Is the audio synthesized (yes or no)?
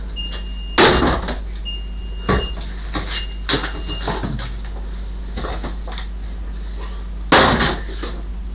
no